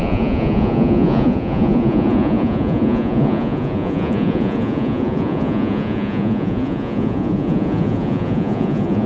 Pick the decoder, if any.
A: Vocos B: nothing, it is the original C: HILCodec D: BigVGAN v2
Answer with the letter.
A